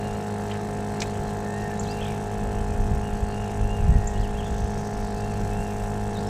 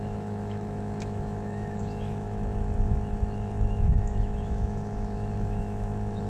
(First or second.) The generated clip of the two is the second